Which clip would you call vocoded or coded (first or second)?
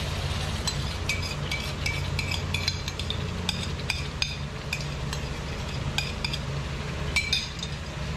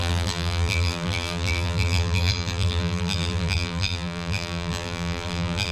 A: second